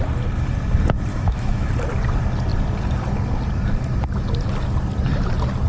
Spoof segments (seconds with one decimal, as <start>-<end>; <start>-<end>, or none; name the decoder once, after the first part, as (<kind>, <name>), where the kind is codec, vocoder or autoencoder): 1.1-1.7 (autoencoder, DAC-VAE)

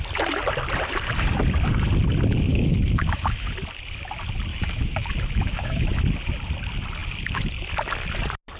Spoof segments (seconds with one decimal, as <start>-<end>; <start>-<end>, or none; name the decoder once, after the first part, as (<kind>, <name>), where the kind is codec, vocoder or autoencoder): 2.5-3.5 (autoencoder, DAC-VAE); 4.5-6.0

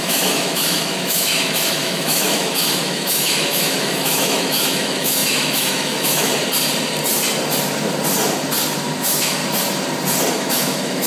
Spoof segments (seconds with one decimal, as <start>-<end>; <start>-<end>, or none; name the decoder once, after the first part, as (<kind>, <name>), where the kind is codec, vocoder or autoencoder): 0.0-6.3 (autoencoder, DAC-VAE); 9.0-9.4; 10.3-11.1